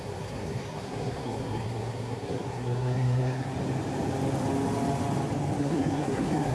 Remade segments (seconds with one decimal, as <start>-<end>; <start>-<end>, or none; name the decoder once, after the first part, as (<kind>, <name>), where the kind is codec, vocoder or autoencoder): 0.0-3.5 (codec, SNAC); 5.6-6.5